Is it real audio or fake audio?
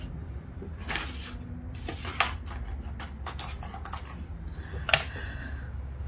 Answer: real